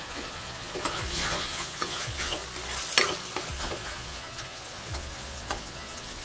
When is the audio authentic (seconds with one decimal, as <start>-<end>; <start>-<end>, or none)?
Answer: 2.4-3.5